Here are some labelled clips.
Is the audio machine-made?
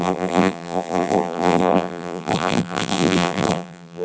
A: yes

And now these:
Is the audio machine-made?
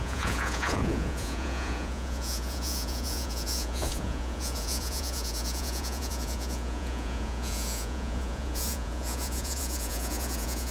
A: yes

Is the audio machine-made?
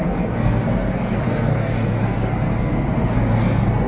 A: yes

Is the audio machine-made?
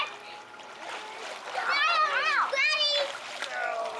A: no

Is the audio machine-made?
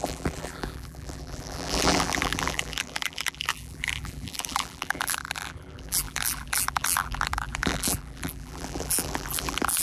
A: yes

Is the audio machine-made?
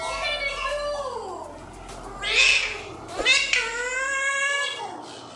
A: no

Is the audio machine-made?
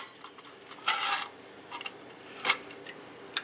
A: no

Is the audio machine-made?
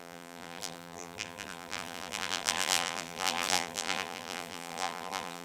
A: yes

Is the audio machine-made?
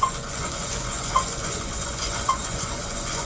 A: yes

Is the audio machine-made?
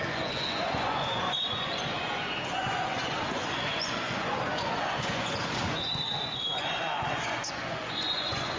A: yes